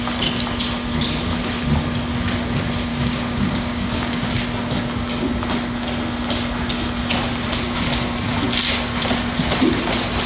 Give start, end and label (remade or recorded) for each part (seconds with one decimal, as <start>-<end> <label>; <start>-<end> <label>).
0.0-2.9 recorded; 2.9-4.3 remade; 4.3-10.3 recorded